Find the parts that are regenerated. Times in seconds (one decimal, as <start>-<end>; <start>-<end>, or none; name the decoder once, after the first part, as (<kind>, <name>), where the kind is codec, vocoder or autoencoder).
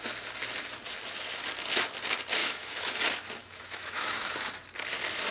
2.4-3.0 (autoencoder, DAC-VAE); 3.4-4.3